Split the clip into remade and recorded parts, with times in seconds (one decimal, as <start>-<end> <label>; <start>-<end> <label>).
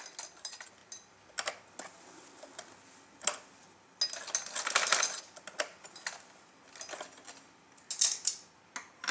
0.0-9.1 recorded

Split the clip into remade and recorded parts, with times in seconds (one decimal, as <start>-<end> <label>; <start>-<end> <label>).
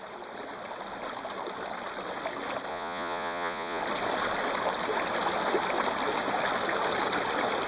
0.0-2.7 recorded; 2.7-3.8 remade; 3.8-7.7 recorded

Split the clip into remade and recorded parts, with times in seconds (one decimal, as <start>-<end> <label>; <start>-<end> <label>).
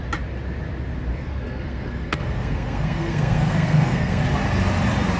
0.0-1.1 recorded; 1.1-4.2 remade; 4.2-5.2 recorded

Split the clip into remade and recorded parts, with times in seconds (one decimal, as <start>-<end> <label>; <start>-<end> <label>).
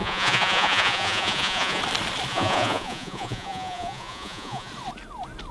0.0-1.8 remade; 1.8-2.3 recorded; 2.3-4.7 remade; 4.7-5.5 recorded